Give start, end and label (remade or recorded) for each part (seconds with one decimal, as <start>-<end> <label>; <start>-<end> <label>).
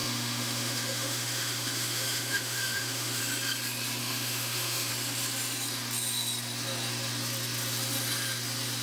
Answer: 0.0-3.2 remade; 3.2-4.0 recorded; 4.0-4.9 remade; 4.9-8.8 recorded